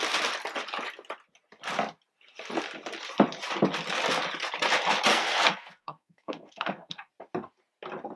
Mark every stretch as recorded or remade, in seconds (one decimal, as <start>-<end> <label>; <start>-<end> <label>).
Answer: 0.0-5.1 recorded; 5.1-7.1 remade; 7.1-8.2 recorded